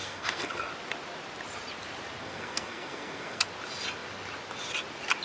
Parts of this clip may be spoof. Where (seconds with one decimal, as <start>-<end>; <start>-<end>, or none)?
0.0-0.7; 2.2-3.4